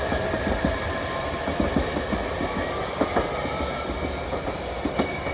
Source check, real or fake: real